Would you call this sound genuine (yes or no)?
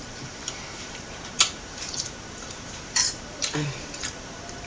no